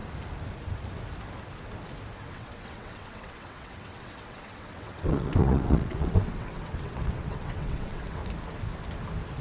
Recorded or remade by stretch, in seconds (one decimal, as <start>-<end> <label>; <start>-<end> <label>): 0.0-2.3 recorded; 2.3-8.2 remade; 8.2-9.4 recorded